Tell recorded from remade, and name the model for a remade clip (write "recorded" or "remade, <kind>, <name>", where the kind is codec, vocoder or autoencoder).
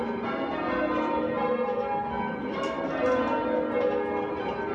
recorded